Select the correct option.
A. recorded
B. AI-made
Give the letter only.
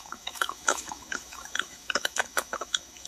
B